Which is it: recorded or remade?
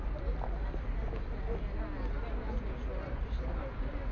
recorded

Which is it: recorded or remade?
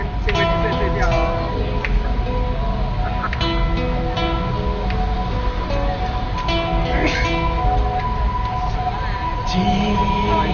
recorded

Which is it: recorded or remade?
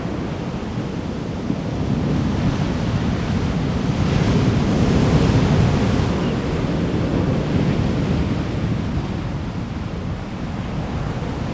recorded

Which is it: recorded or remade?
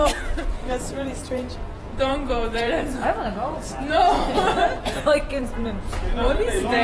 remade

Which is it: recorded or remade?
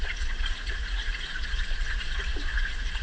remade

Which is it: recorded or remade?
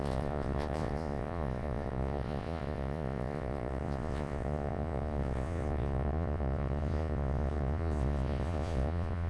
remade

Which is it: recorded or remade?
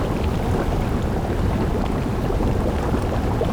recorded